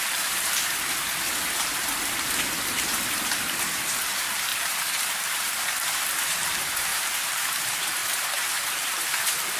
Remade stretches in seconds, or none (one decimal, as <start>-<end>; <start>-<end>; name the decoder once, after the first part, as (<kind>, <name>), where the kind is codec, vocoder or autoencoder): 0.0-1.7 (vocoder, BigVGAN v2); 2.5-9.6